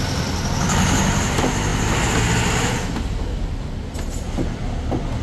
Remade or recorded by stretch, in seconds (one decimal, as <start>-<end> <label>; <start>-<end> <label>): 0.0-5.2 recorded